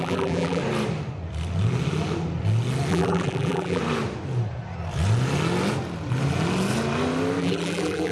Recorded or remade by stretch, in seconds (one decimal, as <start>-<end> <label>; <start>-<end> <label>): 0.0-0.6 remade; 0.6-2.9 recorded; 2.9-3.8 remade; 3.8-7.4 recorded; 7.4-8.1 remade